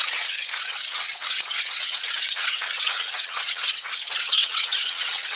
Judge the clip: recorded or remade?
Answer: remade